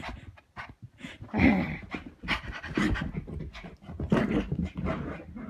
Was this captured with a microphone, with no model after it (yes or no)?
yes